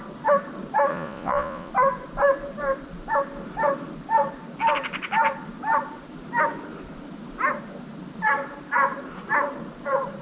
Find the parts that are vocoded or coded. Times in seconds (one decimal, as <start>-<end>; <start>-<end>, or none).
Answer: 0.9-1.7